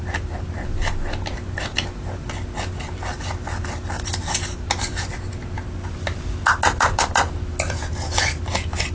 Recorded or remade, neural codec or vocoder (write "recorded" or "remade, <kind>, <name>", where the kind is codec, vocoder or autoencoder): recorded